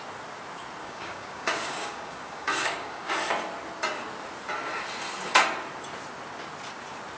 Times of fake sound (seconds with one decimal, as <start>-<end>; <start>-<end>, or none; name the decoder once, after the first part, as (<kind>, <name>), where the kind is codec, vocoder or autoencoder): 0.8-3.1 (codec, DAC)